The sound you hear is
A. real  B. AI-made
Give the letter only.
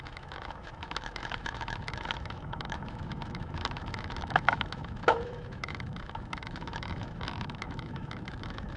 B